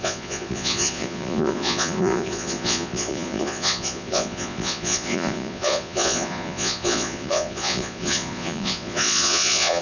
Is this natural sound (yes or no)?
no